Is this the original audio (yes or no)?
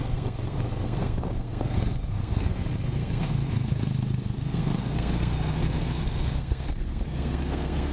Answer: no